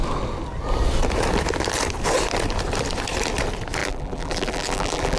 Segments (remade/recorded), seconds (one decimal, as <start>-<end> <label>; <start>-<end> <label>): 0.0-3.8 recorded; 3.8-5.2 remade